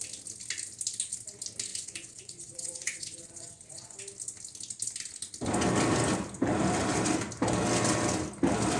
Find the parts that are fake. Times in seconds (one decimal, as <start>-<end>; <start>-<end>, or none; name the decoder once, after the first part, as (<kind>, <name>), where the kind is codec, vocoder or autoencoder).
1.7-4.0 (vocoder, Vocos)